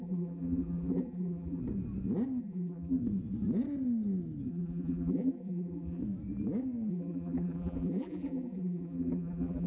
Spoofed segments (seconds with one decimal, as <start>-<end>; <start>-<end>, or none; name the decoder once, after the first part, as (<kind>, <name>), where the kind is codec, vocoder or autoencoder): 0.0-1.6 (vocoder, BigVGAN v2); 2.4-3.0; 4.5-6.0; 6.9-9.7